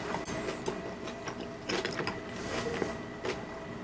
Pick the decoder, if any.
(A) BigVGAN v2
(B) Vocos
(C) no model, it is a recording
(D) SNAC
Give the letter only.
C